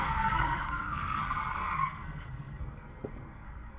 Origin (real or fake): fake